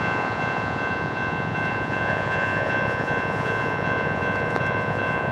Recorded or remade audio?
remade